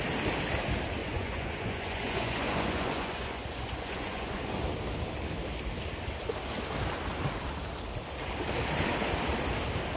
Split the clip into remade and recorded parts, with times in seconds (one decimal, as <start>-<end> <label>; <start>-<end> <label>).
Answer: 0.0-1.0 recorded; 1.0-4.4 remade; 4.4-10.0 recorded